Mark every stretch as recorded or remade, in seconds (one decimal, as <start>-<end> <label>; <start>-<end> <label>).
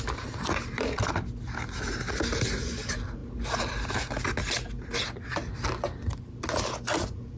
0.0-7.4 recorded